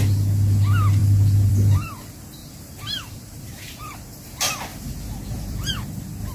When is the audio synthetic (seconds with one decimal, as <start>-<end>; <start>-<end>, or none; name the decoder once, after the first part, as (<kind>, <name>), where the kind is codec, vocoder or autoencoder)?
2.4-3.8 (vocoder, BigVGAN v2); 4.7-5.7